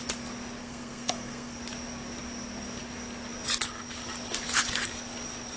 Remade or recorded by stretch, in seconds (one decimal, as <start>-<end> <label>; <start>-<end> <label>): 0.0-0.6 recorded; 0.6-1.6 remade; 1.6-5.6 recorded